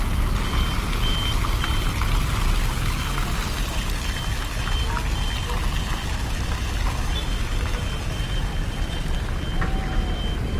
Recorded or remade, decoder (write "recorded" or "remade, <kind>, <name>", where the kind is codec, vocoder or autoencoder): recorded